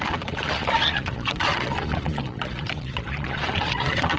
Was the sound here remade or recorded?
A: remade